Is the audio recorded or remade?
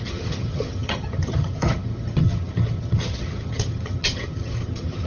remade